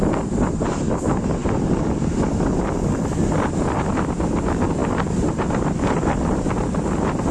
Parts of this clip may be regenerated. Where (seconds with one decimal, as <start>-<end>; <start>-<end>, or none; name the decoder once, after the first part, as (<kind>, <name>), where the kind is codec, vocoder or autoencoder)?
none